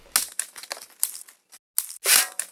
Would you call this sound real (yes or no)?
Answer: yes